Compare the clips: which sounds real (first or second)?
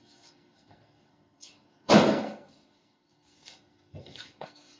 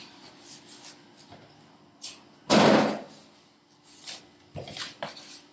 second